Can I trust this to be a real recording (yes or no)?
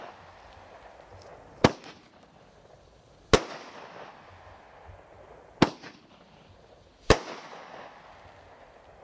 yes